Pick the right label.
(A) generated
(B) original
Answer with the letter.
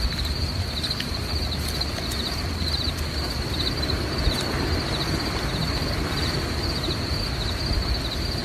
B